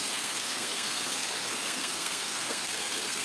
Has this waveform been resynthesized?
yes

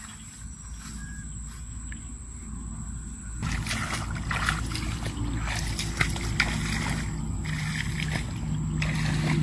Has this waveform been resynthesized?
no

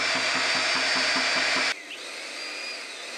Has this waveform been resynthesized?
no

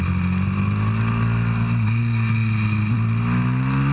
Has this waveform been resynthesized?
no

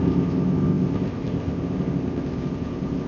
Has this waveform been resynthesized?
yes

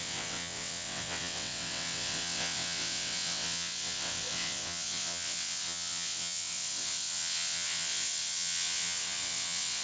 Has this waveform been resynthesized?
yes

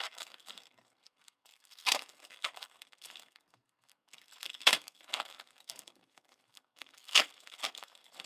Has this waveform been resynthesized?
yes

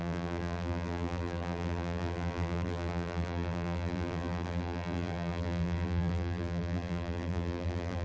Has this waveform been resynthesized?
yes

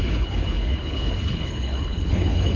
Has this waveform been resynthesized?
yes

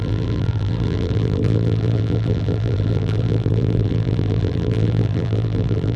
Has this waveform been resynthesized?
yes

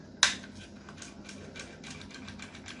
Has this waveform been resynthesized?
no